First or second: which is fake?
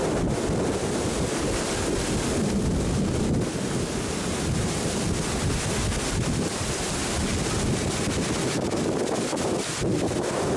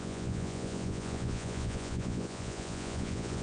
second